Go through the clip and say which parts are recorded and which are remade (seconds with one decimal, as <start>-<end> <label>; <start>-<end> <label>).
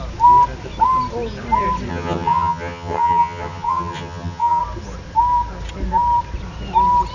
0.0-1.9 recorded; 1.9-4.6 remade; 4.6-7.1 recorded